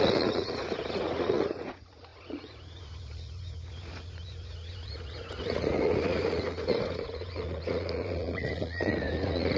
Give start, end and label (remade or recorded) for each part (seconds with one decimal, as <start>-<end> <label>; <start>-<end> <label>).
0.0-9.6 remade